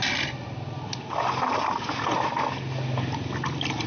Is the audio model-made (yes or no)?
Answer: no